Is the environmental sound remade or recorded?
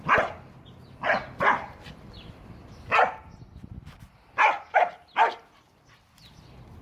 recorded